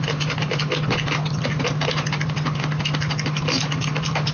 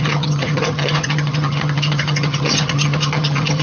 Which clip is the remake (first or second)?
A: second